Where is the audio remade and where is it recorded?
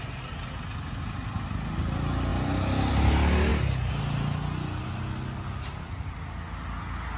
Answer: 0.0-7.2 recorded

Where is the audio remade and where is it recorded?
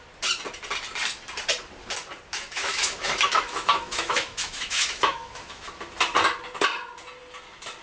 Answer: 0.0-2.3 recorded; 2.3-5.6 remade; 5.6-7.8 recorded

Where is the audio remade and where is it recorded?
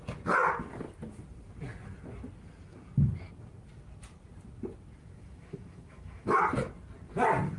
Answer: 0.0-5.0 recorded; 5.0-6.4 remade; 6.4-7.6 recorded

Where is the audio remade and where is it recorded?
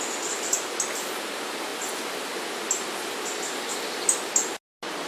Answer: 0.0-5.1 recorded